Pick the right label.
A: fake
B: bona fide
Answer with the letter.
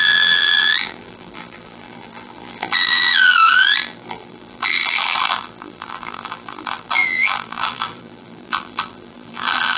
A